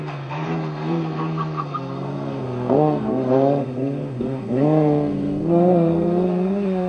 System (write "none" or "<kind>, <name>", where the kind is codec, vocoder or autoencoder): codec, SNAC